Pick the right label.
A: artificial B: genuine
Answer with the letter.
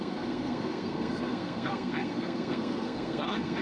A